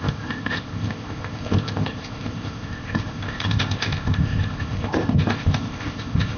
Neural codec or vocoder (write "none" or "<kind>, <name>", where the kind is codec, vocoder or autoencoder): codec, ZipCodec